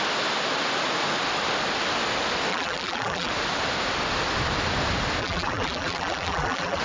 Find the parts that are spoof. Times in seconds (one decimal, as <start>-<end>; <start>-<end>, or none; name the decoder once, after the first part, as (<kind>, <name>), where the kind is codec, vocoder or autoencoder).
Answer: 2.5-3.3 (vocoder, BigVGAN v2); 5.2-6.8